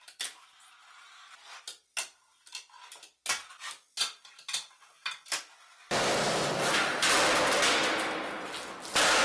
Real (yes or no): yes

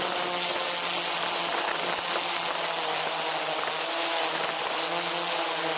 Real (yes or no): yes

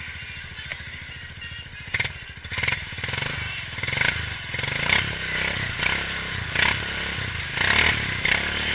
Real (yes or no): yes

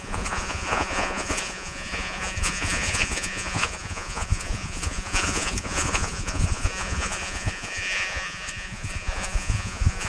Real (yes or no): no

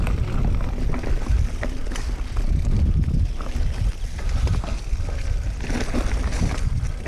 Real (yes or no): yes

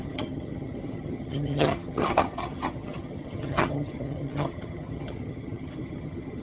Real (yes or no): no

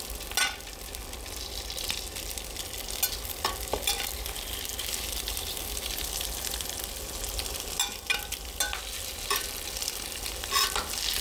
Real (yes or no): yes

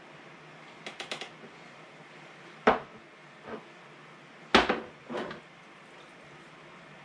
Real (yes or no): yes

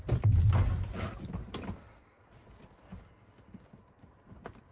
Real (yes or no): yes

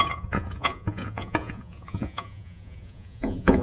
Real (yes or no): no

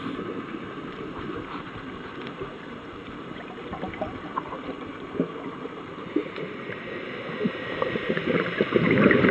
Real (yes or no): no